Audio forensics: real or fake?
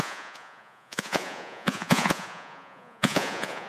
fake